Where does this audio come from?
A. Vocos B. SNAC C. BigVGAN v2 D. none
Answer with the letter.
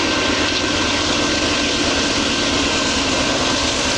D